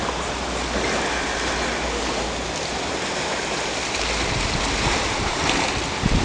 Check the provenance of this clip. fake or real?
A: real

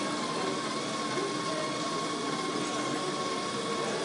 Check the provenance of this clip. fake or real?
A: real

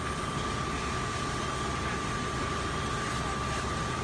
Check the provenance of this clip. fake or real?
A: real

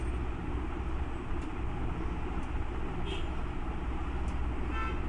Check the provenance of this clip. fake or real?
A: real